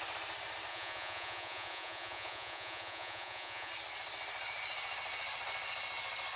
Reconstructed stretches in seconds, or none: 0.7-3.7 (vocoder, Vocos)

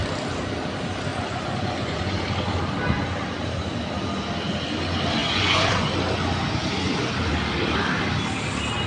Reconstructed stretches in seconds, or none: 1.1-2.2 (vocoder, Vocos); 5.2-5.9

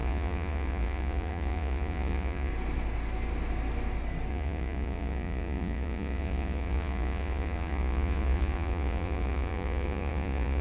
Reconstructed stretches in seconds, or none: 0.0-2.5 (vocoder, Vocos); 4.3-10.6

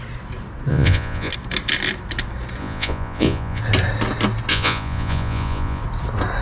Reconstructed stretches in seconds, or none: 0.7-1.3 (vocoder, Vocos); 2.6-3.6; 4.5-5.8

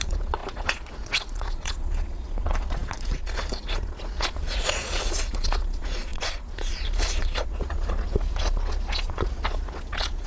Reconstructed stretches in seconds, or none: 0.0-10.3 (vocoder, Vocos)

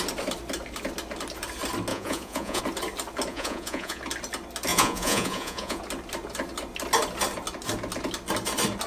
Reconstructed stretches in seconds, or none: 1.9-2.6 (vocoder, Vocos); 3.3-4.0; 4.7-5.8

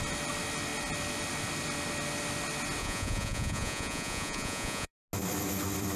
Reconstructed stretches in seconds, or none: 2.8-4.9 (vocoder, Vocos)